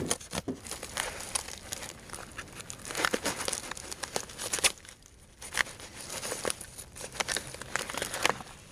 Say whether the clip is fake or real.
real